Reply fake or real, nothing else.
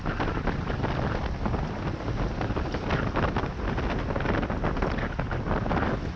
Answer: real